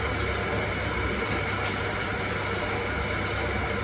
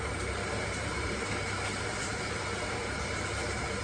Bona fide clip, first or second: first